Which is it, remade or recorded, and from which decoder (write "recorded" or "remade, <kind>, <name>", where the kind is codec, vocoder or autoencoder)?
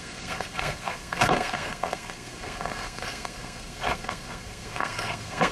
remade, codec, SNAC